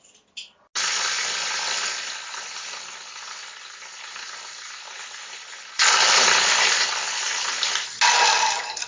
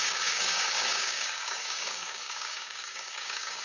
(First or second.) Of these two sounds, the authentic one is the first